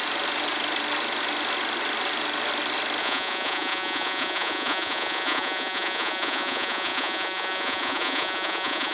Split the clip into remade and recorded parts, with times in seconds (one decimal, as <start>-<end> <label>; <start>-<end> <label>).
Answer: 0.0-3.0 recorded; 3.0-8.9 remade